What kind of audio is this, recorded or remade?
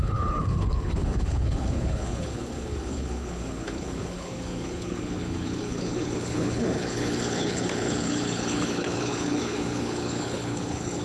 remade